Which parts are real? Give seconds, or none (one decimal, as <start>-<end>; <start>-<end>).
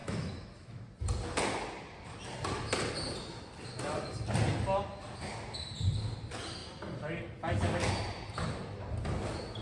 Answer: 0.8-9.6